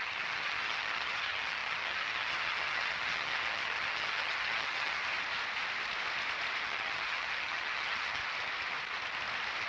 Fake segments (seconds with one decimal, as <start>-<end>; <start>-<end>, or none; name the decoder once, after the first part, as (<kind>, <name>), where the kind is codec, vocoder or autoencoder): 0.0-5.0 (vocoder, HiFi-GAN); 6.6-8.2